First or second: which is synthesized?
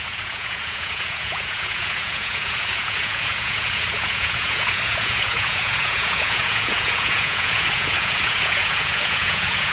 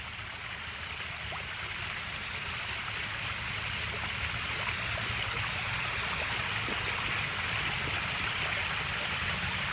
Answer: first